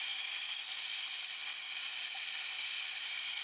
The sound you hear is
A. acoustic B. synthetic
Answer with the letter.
A